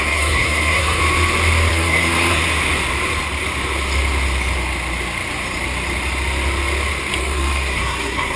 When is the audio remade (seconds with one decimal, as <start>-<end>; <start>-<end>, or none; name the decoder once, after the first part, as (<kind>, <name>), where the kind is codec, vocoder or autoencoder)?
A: 0.0-1.0 (codec, SNAC); 1.7-2.4; 7.2-8.4